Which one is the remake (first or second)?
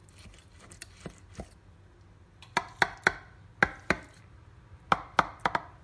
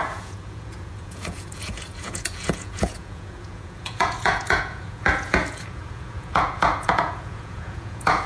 second